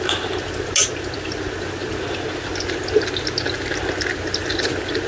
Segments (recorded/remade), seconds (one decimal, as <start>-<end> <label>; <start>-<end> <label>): 0.0-5.1 recorded